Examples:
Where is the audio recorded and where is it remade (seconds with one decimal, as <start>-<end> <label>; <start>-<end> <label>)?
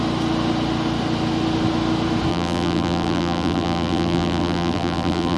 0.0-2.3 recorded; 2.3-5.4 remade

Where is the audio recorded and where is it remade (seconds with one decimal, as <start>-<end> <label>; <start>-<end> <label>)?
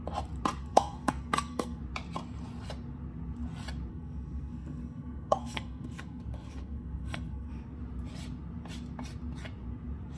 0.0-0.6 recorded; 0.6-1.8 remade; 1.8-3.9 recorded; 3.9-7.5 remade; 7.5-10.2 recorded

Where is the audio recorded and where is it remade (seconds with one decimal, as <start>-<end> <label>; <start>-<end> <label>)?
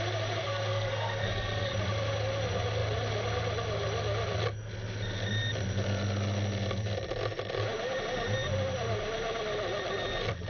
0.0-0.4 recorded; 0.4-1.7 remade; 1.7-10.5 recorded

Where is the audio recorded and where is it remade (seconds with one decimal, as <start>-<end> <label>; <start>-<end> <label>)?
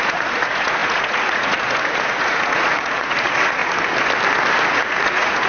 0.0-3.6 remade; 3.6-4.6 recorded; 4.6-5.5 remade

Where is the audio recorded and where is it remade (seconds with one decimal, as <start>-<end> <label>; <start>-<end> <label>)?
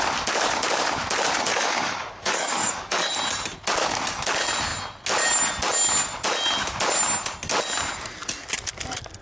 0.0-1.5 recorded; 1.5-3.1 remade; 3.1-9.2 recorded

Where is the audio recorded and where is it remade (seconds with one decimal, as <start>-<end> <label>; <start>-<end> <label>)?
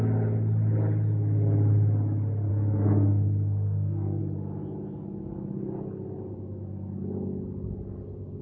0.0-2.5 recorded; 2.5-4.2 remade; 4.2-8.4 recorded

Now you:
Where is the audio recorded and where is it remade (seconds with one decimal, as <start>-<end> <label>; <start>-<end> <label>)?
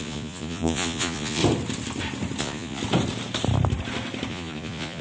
0.0-1.4 remade; 1.4-2.4 recorded; 2.4-2.8 remade; 2.8-4.3 recorded; 4.3-5.0 remade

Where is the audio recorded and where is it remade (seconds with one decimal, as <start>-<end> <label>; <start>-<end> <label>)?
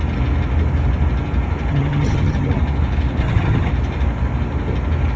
0.0-1.7 recorded; 1.7-2.6 remade; 2.6-3.2 recorded; 3.2-3.7 remade; 3.7-5.2 recorded